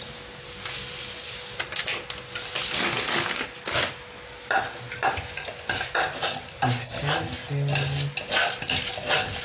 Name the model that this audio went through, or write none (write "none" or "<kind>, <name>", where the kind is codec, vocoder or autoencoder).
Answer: none